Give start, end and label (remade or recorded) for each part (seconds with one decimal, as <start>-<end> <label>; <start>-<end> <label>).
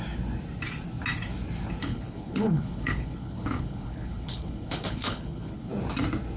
0.0-1.9 recorded; 1.9-5.7 remade; 5.7-6.4 recorded